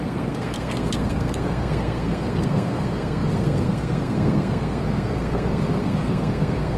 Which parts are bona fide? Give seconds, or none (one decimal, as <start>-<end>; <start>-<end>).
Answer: none